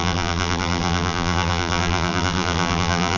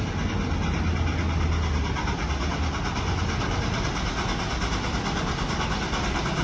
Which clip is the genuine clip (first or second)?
second